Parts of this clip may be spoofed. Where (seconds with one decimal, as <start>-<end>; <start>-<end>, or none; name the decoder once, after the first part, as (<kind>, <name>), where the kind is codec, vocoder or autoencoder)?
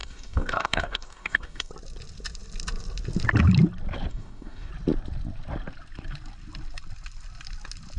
0.0-1.7 (codec, DAC); 4.1-4.7